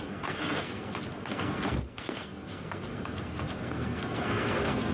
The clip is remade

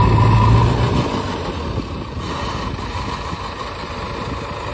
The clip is recorded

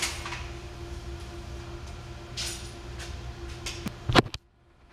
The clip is recorded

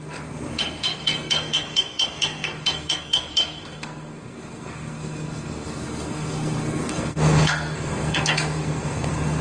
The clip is remade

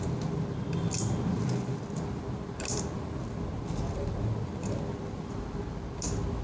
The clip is recorded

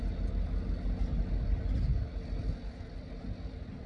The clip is recorded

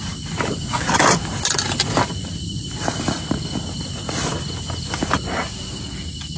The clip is recorded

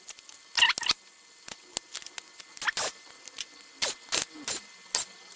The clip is recorded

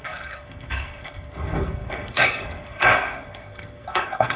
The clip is remade